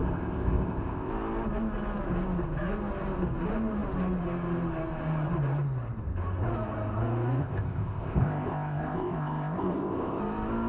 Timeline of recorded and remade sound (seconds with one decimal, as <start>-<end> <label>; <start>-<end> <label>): 0.0-1.1 remade; 1.1-7.4 recorded; 7.4-10.2 remade; 10.2-10.7 recorded